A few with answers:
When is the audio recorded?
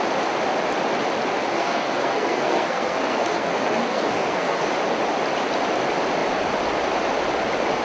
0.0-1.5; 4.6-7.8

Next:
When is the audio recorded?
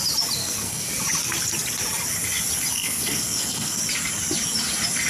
0.0-0.4; 0.9-2.7; 3.8-5.1